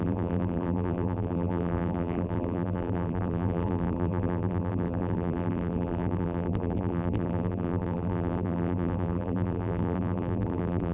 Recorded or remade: remade